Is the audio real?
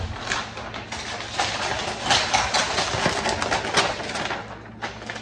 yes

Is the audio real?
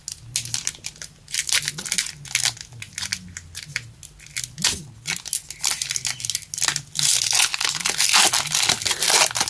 yes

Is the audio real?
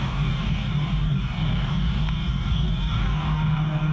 no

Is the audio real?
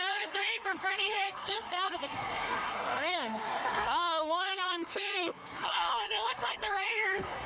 no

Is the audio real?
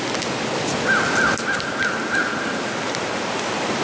yes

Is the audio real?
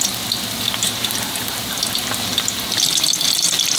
no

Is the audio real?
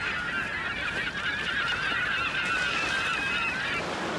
yes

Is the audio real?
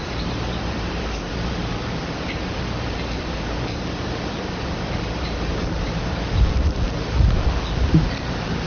no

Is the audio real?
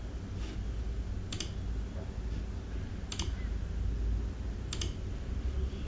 yes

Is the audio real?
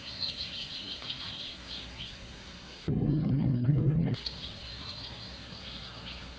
no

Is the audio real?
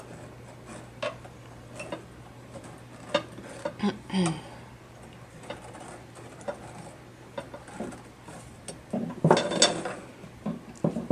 yes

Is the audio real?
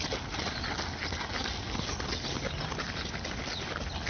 yes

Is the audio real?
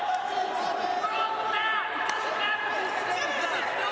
no